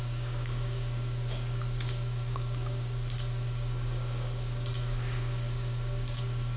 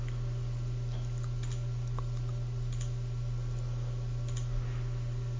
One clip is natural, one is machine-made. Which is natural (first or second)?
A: second